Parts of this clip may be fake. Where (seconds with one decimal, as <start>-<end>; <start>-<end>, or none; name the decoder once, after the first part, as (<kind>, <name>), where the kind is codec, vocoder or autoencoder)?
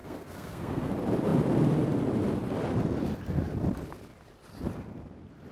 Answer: 0.0-0.9 (codec, SNAC)